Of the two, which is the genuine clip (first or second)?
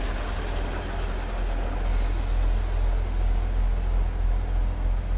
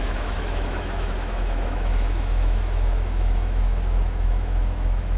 first